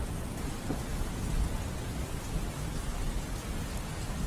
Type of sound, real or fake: real